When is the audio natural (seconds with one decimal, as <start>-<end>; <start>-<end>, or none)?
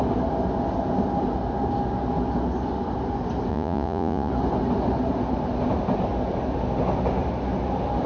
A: 0.0-3.5; 4.3-8.1